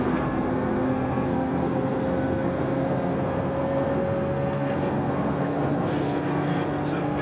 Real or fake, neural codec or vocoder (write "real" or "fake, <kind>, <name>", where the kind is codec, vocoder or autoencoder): fake, codec, SNAC